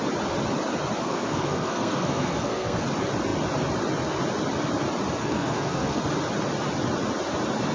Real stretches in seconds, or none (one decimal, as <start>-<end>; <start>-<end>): 0.0-1.0; 2.8-5.2; 6.0-7.7